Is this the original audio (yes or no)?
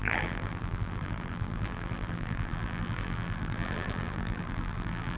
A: no